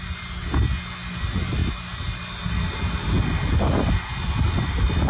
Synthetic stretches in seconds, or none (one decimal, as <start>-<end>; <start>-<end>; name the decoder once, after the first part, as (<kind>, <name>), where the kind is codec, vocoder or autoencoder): none